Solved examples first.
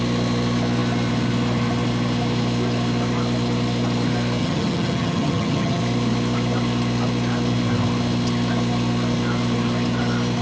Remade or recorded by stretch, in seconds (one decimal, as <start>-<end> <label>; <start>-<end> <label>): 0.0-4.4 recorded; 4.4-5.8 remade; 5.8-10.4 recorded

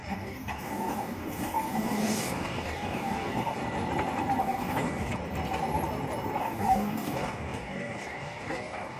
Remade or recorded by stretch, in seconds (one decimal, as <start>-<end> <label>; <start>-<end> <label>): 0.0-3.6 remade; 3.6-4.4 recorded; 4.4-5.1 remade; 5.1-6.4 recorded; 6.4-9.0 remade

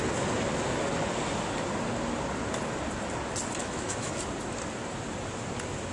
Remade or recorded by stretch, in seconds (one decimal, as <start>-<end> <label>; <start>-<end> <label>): 0.0-3.6 recorded; 3.6-4.1 remade; 4.1-5.9 recorded